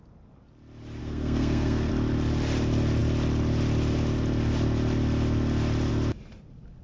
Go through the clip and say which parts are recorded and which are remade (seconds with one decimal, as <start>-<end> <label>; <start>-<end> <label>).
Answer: 0.0-1.0 recorded; 1.0-1.9 remade; 1.9-6.8 recorded